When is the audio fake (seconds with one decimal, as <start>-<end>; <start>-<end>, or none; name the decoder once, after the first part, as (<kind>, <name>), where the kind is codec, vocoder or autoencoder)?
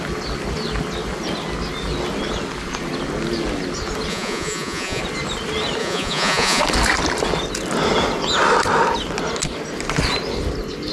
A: 4.1-5.0 (vocoder, Vocos); 5.8-6.6